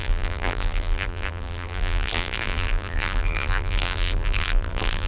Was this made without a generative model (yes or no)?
no